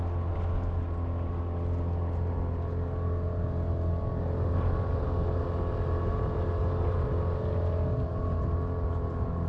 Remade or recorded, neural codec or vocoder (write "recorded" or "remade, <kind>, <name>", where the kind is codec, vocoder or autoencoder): recorded